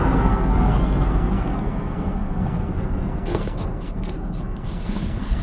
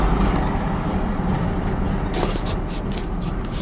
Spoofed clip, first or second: first